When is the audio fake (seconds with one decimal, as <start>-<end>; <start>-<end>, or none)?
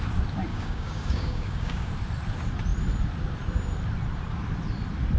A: 0.5-1.9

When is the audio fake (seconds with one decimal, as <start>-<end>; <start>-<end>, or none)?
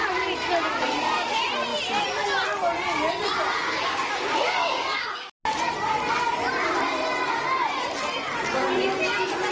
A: 3.6-5.3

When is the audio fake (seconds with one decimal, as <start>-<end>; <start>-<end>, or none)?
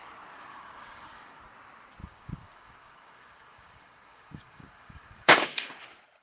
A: 0.5-1.4; 2.0-5.7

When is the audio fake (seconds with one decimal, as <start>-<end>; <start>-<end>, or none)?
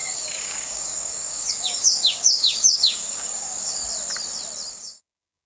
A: 0.0-3.8; 4.7-5.5